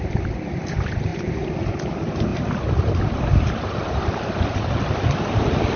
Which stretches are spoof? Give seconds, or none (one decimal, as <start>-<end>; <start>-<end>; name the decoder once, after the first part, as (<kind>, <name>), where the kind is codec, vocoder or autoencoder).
none

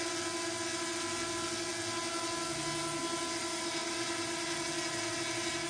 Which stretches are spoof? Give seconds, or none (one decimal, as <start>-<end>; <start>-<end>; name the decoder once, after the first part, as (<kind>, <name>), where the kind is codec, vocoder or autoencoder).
none

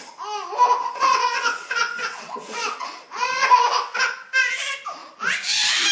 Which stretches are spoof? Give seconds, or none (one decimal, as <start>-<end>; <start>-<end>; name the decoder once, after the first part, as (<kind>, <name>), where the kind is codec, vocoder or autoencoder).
0.8-3.5 (vocoder, WaveNeXt)

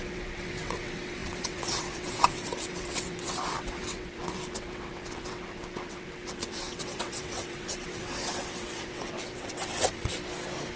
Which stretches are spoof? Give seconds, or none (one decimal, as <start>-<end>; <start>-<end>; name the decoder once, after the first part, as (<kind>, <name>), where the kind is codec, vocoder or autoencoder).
0.0-10.1 (vocoder, WaveNeXt)

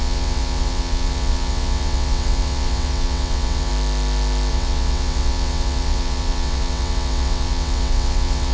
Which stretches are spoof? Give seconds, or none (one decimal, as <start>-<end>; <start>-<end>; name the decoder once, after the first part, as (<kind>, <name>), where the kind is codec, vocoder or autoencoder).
0.0-3.7 (vocoder, WaveNeXt); 4.5-8.5